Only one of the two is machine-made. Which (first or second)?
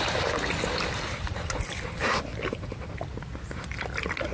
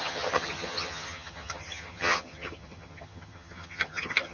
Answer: second